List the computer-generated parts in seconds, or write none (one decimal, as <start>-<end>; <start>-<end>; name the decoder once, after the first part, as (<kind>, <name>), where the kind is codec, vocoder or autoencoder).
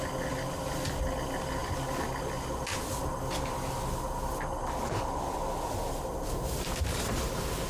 none